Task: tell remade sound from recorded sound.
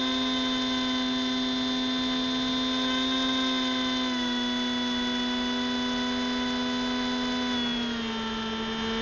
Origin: recorded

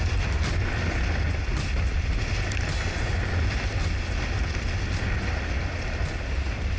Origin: recorded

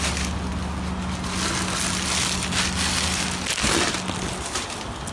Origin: recorded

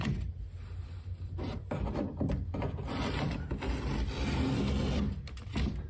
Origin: recorded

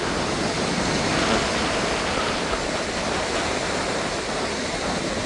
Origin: remade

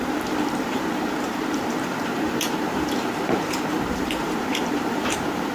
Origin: remade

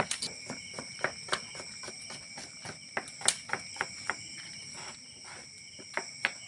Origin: recorded